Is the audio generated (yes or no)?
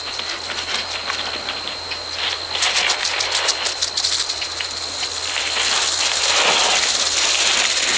no